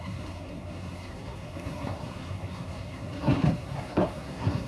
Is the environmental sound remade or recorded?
remade